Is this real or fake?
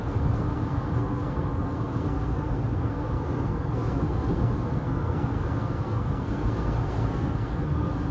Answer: fake